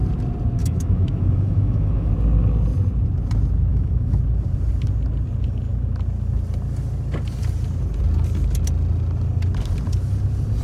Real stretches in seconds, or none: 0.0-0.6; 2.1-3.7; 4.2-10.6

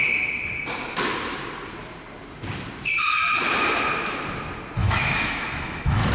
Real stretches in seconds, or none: 0.0-4.8

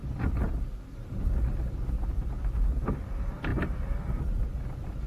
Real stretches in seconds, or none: 0.0-5.1